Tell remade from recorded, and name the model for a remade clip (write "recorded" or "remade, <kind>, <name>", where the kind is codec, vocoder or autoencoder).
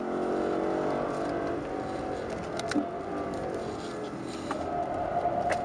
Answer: recorded